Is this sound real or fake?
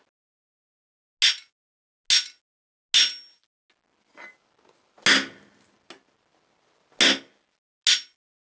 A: real